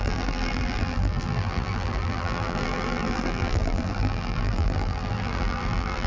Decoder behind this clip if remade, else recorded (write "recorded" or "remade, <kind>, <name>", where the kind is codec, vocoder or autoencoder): remade, vocoder, BigVGAN v2